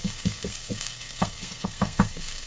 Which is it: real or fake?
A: fake